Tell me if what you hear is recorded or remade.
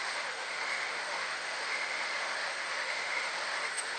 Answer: remade